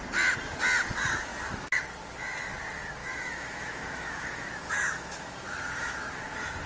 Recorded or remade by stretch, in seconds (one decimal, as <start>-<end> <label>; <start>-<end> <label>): 0.0-3.0 recorded; 3.0-6.1 remade; 6.1-6.7 recorded